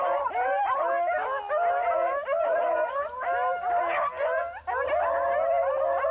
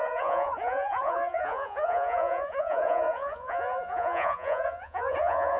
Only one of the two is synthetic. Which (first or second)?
second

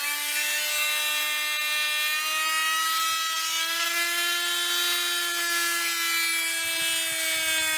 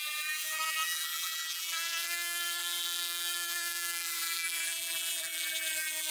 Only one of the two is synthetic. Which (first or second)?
second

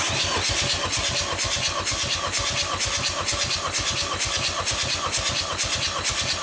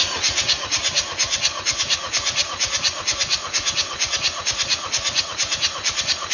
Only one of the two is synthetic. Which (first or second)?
second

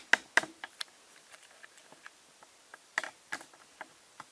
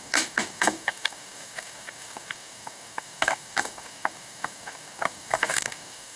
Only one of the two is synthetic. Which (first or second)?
second